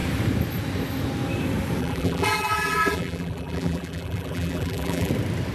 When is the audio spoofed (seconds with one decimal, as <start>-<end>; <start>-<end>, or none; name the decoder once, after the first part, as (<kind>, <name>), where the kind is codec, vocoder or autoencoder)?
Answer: 1.8-5.1 (vocoder, BigVGAN v2)